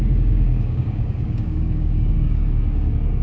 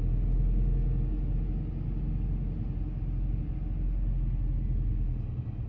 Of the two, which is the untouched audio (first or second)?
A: second